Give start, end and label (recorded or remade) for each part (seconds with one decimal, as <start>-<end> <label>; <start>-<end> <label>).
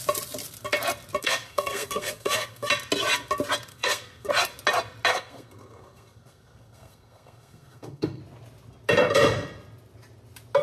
0.0-1.2 recorded; 1.2-2.7 remade; 2.7-3.7 recorded; 3.7-4.3 remade; 4.3-5.1 recorded; 5.1-8.2 remade; 8.2-10.6 recorded